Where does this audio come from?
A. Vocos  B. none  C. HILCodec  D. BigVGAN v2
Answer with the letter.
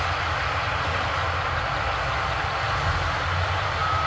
B